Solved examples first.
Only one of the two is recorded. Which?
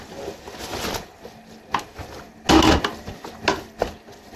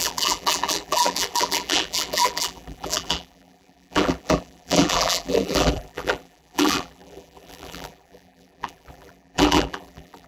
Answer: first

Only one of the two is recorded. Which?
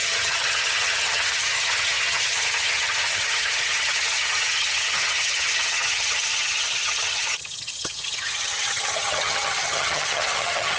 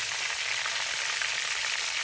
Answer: second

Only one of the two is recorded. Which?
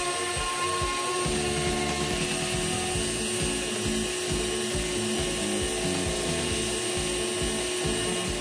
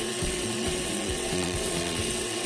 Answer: first